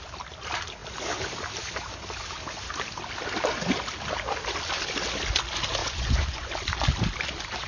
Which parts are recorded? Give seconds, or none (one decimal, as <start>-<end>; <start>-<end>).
0.0-5.8; 6.5-7.7